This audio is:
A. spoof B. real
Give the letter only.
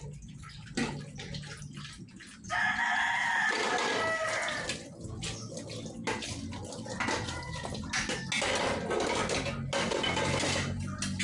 B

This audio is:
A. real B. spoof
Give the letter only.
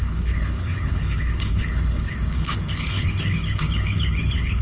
B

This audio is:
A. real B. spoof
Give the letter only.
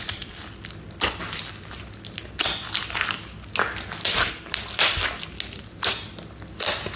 A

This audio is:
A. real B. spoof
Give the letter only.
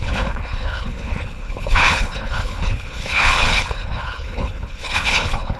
B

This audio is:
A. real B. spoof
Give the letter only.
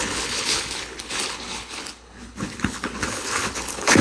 B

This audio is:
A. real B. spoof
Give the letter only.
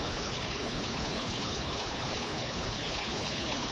B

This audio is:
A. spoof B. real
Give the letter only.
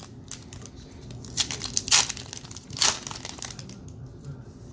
B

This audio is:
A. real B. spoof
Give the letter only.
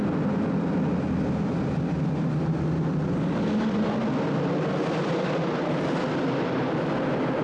A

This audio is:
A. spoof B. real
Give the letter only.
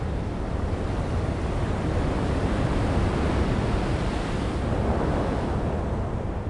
B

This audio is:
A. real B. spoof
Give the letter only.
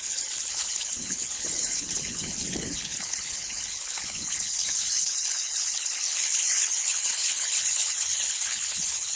B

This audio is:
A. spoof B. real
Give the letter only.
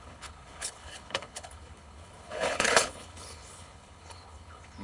A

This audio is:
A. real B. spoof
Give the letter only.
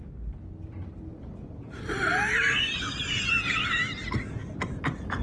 A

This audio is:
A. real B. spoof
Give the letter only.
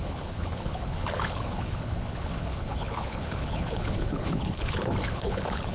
B